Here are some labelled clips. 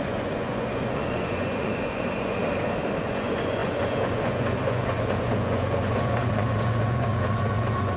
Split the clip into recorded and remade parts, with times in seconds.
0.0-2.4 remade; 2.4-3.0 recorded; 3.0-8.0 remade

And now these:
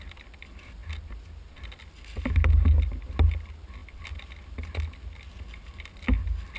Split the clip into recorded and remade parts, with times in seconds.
0.0-6.6 recorded

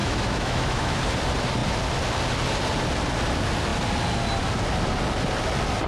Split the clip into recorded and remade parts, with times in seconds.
0.0-1.0 remade; 1.0-5.9 recorded

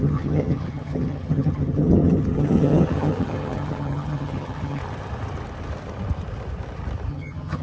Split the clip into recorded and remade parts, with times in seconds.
0.0-4.8 remade; 4.8-7.1 recorded; 7.1-7.6 remade

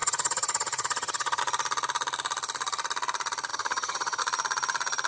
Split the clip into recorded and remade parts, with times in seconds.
0.0-1.4 remade; 1.4-3.5 recorded; 3.5-4.2 remade; 4.2-5.1 recorded

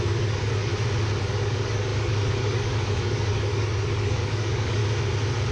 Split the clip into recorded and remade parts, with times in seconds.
0.0-0.7 remade; 0.7-1.2 recorded; 1.2-4.8 remade; 4.8-5.5 recorded

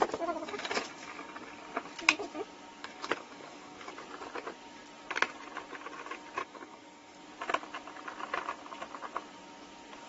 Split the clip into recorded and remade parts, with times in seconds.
0.0-0.4 recorded; 0.4-1.6 remade; 1.6-2.8 recorded; 2.8-3.9 remade; 3.9-6.4 recorded; 6.4-7.2 remade; 7.2-10.1 recorded